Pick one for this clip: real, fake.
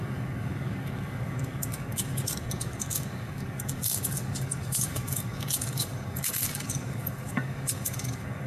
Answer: fake